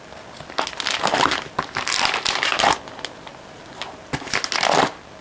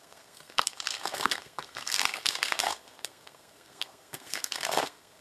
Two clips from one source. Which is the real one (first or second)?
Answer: first